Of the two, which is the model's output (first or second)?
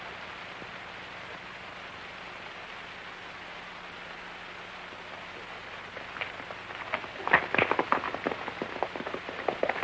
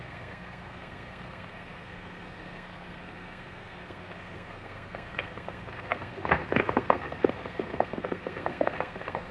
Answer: second